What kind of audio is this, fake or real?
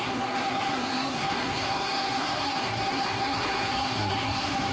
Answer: fake